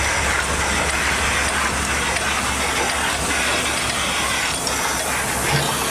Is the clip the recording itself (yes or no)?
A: yes